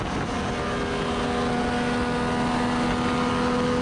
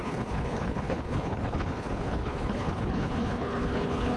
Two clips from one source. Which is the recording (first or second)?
first